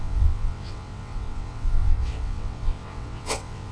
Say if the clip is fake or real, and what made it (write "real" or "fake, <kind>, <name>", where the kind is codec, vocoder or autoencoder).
fake, vocoder, WaveNeXt